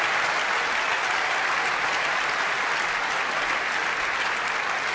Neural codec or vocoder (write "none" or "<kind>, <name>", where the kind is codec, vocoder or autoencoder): none